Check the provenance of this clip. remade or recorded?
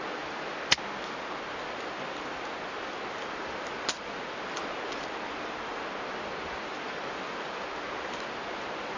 recorded